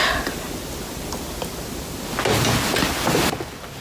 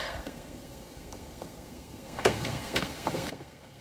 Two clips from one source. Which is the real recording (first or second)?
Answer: first